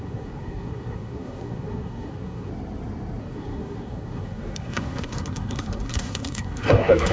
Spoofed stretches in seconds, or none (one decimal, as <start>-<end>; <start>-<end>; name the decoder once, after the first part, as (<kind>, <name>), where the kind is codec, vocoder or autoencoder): 0.0-2.5 (codec, SNAC); 3.2-7.1